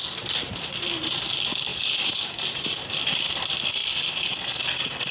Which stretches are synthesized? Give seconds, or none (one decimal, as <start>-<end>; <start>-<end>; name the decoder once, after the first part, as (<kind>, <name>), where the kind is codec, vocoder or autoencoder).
1.7-2.9 (vocoder, BigVGAN v2)